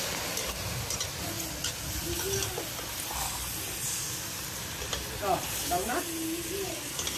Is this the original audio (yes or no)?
yes